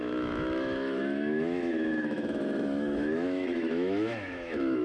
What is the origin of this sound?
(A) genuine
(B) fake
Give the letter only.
B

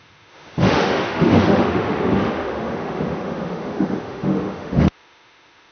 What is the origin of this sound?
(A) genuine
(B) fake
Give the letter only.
B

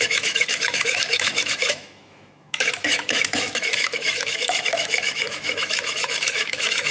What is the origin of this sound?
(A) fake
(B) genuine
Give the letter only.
A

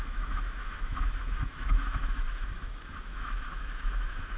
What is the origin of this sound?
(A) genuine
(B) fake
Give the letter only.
B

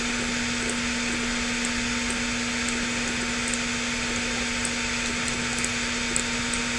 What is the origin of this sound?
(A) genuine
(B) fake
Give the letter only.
A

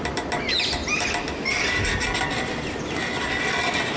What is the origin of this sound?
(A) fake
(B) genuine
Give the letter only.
B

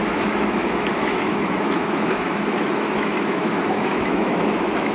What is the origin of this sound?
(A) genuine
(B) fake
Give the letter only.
B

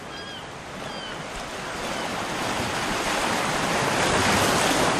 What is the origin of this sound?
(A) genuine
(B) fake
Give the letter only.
A